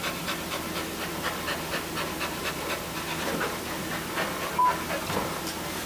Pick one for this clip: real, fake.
real